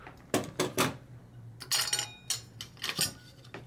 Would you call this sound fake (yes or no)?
no